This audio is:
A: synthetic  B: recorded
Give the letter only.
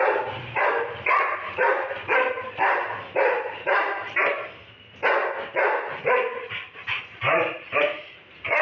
A